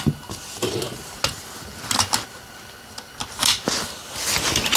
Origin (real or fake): real